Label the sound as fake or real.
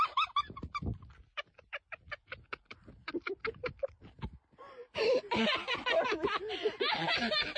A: fake